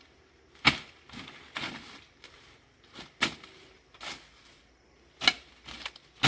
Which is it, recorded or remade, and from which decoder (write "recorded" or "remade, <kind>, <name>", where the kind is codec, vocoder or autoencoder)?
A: recorded